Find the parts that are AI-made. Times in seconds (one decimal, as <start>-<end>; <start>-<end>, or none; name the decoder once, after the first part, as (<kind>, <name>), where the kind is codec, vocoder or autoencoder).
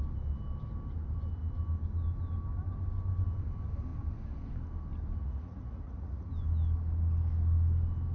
5.2-6.3 (vocoder, Vocos)